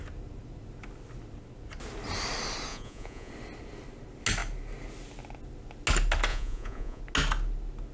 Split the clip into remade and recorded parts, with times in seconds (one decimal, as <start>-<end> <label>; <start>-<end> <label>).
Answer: 0.0-2.7 recorded; 2.7-3.3 remade; 3.3-6.3 recorded; 6.3-7.0 remade; 7.0-7.9 recorded

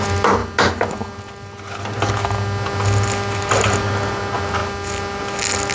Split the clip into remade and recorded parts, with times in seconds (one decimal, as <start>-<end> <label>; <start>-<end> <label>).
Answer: 0.0-5.7 recorded